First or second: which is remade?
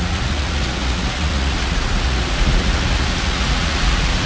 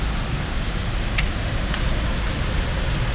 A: first